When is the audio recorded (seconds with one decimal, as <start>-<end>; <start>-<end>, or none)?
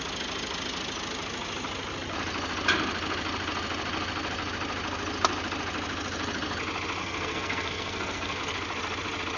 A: 0.0-7.0; 8.4-9.4